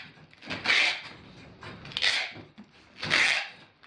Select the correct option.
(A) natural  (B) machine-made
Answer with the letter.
A